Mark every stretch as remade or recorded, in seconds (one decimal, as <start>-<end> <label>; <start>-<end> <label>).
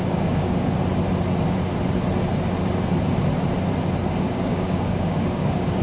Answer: 0.0-0.7 remade; 0.7-4.0 recorded; 4.0-5.8 remade